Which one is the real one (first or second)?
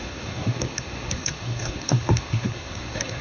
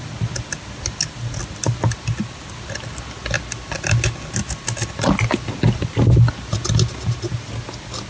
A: second